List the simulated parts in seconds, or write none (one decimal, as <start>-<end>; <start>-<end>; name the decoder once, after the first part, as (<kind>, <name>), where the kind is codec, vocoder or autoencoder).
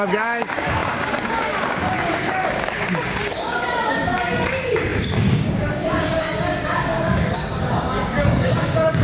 0.0-9.0 (codec, DAC)